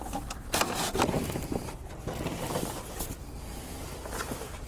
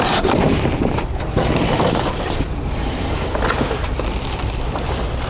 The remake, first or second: second